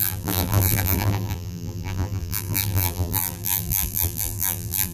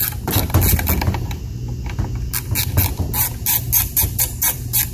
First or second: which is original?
second